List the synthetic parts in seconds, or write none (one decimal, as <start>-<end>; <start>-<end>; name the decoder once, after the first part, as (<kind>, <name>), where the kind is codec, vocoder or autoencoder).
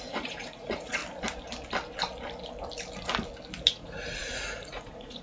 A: 0.0-1.0 (vocoder, Vocos); 3.7-5.2